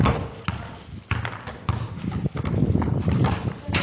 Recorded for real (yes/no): yes